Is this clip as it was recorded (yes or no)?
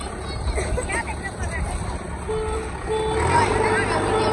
yes